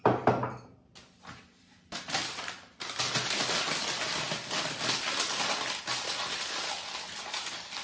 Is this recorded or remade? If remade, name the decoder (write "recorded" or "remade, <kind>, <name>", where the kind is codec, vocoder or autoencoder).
recorded